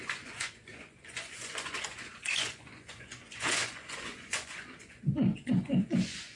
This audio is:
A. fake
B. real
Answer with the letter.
A